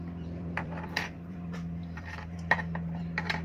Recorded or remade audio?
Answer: remade